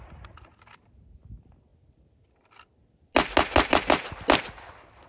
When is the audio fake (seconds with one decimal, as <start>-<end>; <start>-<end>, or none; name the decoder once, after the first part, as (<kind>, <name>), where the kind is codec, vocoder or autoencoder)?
none